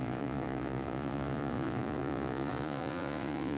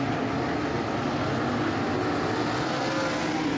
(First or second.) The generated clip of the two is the first